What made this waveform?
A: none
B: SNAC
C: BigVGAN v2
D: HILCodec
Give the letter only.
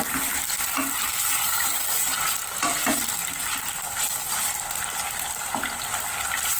A